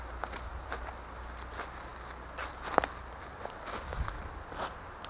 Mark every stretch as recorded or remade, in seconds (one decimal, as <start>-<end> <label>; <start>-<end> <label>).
0.0-5.1 recorded